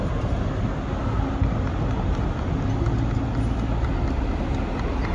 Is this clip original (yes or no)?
yes